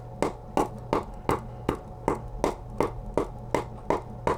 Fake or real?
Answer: real